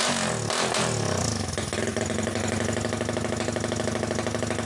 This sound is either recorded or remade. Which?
recorded